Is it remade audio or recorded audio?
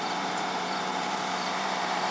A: remade